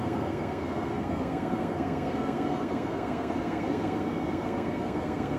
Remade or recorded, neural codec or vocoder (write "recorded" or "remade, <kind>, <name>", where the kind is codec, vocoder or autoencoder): remade, codec, SNAC